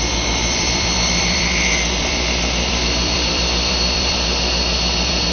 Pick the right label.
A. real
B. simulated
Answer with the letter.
B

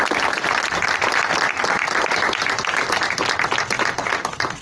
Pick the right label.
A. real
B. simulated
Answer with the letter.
A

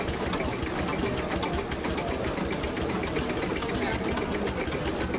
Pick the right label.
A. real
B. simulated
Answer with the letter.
A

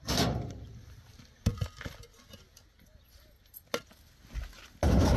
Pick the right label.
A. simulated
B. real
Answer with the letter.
B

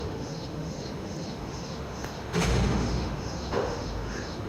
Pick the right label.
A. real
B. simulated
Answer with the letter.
B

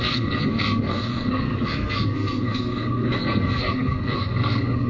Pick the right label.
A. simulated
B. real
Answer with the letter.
A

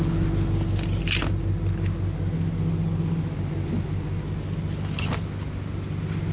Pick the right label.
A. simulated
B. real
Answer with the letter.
B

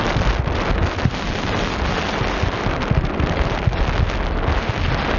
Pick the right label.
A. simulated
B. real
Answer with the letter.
B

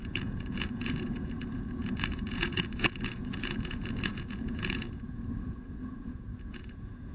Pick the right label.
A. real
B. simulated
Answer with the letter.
B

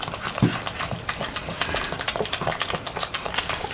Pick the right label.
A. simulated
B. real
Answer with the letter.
B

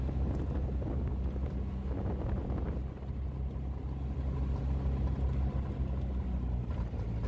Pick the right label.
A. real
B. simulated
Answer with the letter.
A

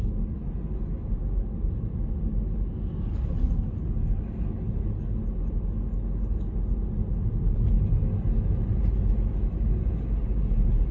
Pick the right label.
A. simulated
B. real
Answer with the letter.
B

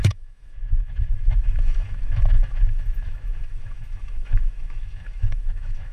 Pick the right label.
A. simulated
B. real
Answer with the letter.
A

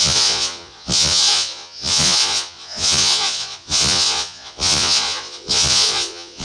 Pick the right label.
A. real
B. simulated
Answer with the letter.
B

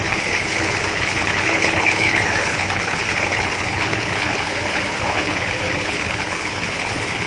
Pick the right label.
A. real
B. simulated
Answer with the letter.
B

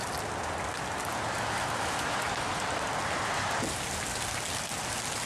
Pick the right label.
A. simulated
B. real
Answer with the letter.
B